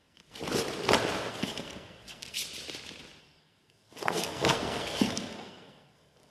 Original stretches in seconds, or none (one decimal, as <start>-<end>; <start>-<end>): 0.4-1.3; 2.4-3.2